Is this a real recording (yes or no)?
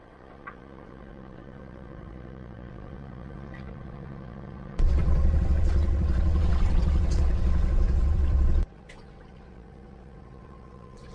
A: no